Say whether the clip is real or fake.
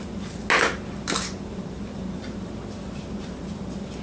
real